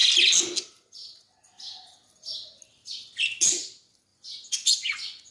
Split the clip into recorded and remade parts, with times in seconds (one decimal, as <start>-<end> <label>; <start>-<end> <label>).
0.0-4.1 recorded; 4.1-5.3 remade